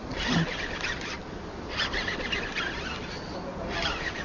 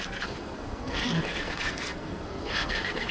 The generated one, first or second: second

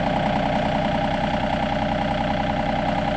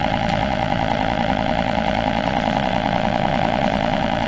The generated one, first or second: second